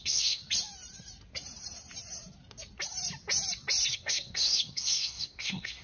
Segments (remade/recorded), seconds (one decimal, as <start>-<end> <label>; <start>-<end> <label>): 0.0-0.4 remade; 0.4-3.9 recorded; 3.9-5.8 remade